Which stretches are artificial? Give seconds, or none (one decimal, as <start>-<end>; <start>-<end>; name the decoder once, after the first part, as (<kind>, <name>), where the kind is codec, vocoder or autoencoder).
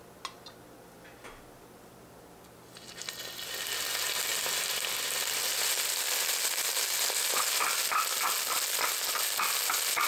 none